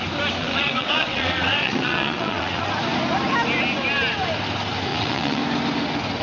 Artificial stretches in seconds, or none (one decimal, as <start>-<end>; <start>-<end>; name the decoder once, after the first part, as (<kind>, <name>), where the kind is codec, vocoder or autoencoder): 0.4-2.6 (vocoder, WaveNeXt); 4.9-5.4